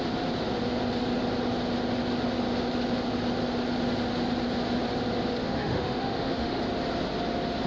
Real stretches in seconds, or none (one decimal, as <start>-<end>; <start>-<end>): 0.0-5.4; 6.6-7.7